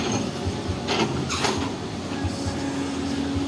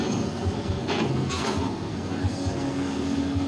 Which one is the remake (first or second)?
second